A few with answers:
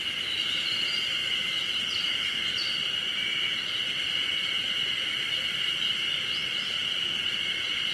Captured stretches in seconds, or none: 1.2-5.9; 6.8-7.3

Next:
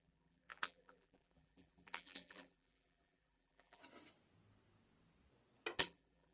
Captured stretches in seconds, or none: 3.8-5.8

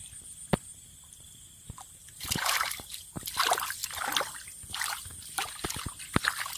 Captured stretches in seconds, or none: 0.0-0.7; 2.7-6.6

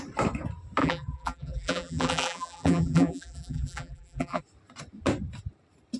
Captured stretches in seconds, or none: 0.0-0.8; 4.4-6.0

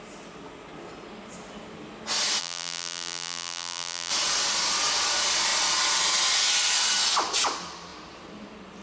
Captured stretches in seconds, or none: 0.0-2.4; 4.1-8.8